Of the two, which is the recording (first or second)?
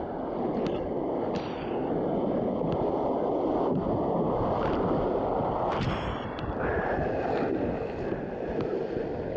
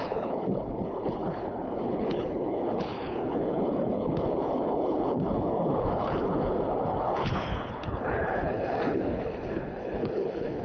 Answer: first